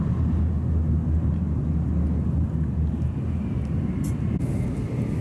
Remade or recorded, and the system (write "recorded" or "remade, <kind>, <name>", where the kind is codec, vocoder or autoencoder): recorded